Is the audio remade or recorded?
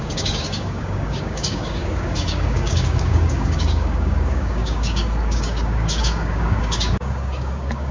remade